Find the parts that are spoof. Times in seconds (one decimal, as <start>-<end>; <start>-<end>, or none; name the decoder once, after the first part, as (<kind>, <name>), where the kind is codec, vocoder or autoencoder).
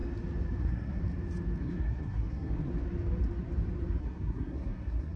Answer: 0.6-1.0 (codec, SNAC); 1.6-2.7; 4.0-5.2